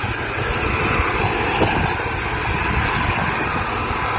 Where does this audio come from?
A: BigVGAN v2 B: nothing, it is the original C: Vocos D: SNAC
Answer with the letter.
B